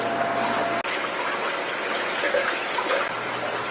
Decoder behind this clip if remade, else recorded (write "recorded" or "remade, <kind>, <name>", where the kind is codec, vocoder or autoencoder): recorded